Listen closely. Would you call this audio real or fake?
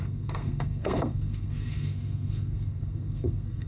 fake